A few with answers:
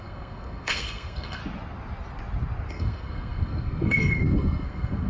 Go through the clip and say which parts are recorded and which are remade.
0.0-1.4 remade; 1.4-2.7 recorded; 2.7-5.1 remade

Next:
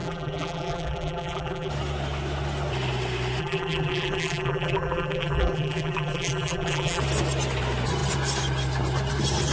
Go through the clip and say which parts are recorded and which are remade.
0.0-1.7 remade; 1.7-3.4 recorded; 3.4-7.0 remade; 7.0-9.5 recorded